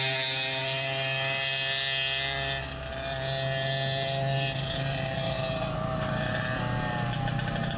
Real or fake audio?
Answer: real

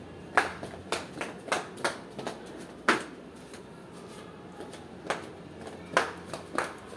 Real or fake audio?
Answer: real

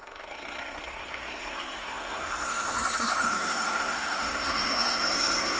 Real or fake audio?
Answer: fake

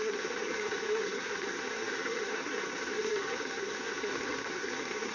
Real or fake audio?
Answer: fake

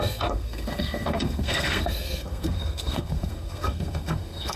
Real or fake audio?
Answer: fake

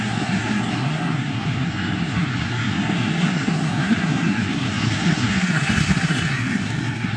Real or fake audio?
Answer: fake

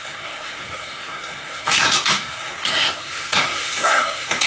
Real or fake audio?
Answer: fake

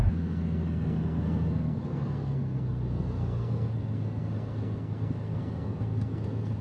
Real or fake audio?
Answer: fake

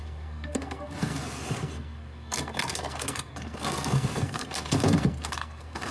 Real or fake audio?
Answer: fake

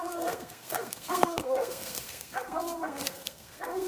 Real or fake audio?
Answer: fake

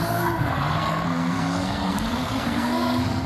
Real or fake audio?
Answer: fake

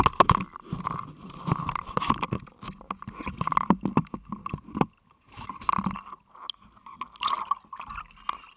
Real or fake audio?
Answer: real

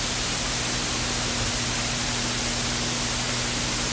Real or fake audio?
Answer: real